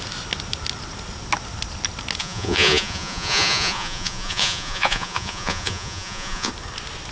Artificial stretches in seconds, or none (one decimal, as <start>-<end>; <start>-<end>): 2.2-6.5